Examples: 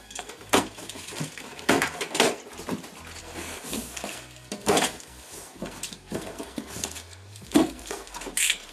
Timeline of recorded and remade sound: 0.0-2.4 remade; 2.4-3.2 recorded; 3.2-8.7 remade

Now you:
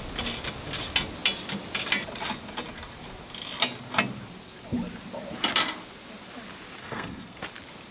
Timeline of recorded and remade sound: 0.0-6.8 recorded; 6.8-7.4 remade; 7.4-7.9 recorded

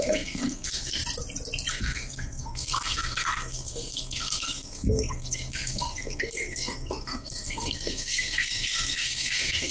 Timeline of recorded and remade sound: 0.0-1.0 remade; 1.0-1.7 recorded; 1.7-9.7 remade

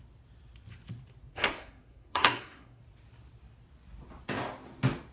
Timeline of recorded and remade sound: 0.0-1.3 recorded; 1.3-2.8 remade; 2.8-5.1 recorded

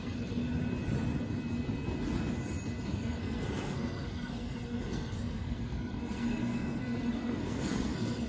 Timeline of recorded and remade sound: 0.0-0.4 remade; 0.4-2.9 recorded; 2.9-8.3 remade

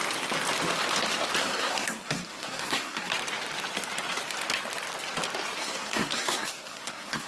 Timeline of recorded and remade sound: 0.0-1.4 recorded; 1.4-3.1 remade; 3.1-5.6 recorded; 5.6-7.3 remade